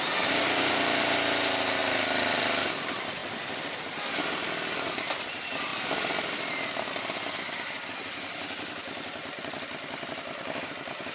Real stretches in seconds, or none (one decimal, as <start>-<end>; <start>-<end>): 0.0-11.1